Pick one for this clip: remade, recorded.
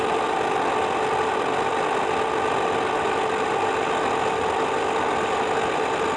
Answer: recorded